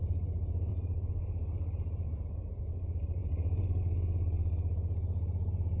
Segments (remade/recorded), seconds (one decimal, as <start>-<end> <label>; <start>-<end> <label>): 0.0-0.7 recorded; 0.7-2.6 remade; 2.6-3.2 recorded; 3.2-3.8 remade; 3.8-5.8 recorded